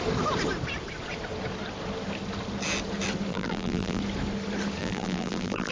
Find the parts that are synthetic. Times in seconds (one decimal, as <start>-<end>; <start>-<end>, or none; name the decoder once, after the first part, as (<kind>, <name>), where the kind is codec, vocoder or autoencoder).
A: 3.3-4.0 (vocoder, BigVGAN v2); 4.8-5.7

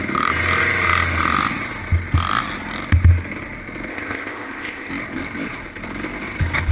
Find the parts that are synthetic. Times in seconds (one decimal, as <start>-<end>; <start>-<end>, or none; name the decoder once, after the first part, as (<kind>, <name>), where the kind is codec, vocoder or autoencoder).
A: 3.9-4.9 (codec, ZipCodec)

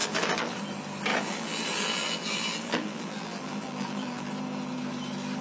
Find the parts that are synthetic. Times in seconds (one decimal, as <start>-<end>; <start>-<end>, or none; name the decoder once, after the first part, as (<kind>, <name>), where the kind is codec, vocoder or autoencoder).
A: 0.0-0.6 (vocoder, BigVGAN v2); 1.1-4.3

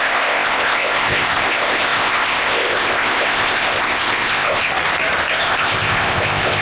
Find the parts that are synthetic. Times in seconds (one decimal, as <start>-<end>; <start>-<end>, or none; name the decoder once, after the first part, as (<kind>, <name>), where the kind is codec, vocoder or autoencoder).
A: 0.0-4.7 (codec, ZipCodec); 5.3-6.6

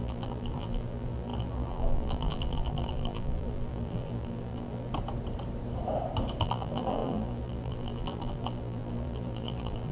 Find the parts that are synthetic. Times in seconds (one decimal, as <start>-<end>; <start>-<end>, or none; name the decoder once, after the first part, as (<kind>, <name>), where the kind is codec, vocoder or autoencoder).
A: 0.0-4.9 (vocoder, BigVGAN v2); 6.4-9.9

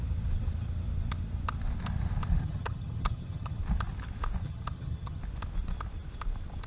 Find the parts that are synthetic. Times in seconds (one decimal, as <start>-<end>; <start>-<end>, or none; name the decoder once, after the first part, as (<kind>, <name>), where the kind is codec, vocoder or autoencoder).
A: 2.4-3.6 (vocoder, HiFi-GAN); 4.4-5.2